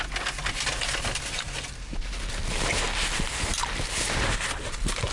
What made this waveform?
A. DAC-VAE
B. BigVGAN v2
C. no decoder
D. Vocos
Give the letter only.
C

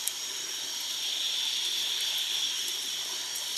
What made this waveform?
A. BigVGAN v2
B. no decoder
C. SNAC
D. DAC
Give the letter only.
A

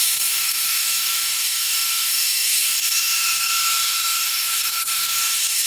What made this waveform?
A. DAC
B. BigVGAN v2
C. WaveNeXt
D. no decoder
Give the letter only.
A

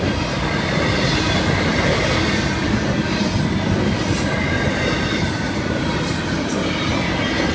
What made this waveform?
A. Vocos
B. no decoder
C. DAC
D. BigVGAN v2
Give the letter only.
B